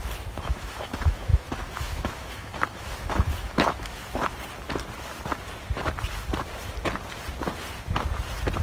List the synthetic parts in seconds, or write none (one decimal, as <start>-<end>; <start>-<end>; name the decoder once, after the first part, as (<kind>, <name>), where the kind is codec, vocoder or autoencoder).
0.0-4.0 (autoencoder, DAC-VAE)